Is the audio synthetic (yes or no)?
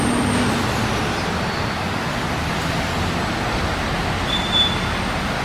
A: no